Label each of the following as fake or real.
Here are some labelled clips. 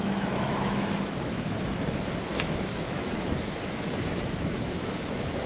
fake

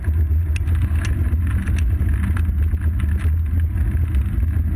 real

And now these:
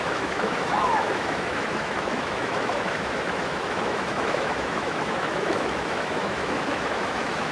fake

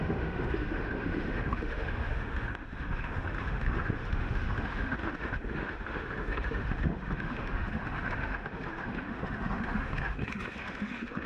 fake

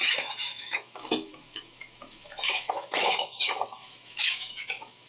fake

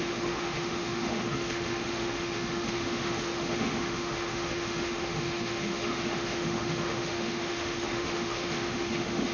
fake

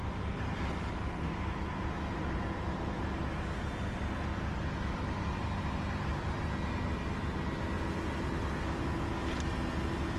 real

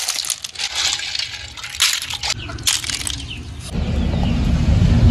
real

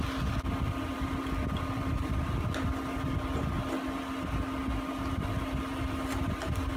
real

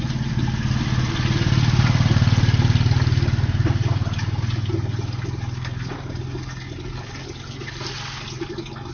real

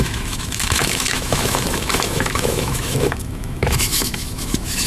fake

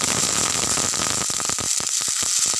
real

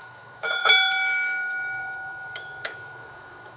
fake